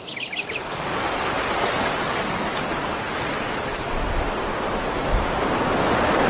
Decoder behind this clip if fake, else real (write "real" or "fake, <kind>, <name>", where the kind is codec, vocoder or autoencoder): real